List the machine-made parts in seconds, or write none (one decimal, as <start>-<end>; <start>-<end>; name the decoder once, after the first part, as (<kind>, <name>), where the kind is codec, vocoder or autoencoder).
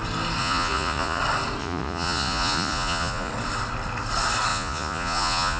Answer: 0.4-1.2 (vocoder, Vocos); 1.6-3.3; 4.5-5.6